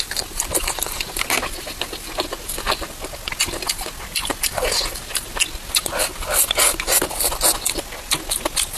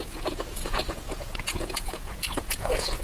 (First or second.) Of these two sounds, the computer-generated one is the second